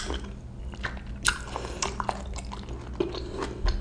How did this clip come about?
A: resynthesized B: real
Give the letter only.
B